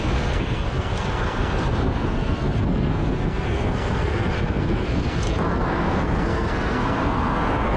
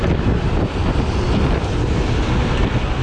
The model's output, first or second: first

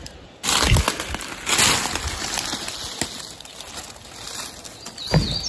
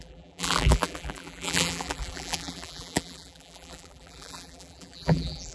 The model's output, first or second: second